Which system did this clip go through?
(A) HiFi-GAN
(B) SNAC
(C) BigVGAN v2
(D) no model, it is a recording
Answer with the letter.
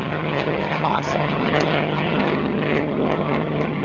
A